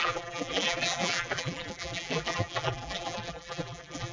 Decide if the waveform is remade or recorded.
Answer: remade